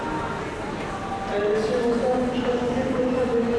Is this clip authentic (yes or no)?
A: yes